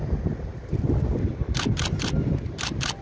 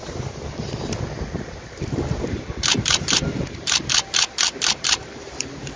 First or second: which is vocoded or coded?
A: second